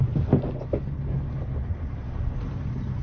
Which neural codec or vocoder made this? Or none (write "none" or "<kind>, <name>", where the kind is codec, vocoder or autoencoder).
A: none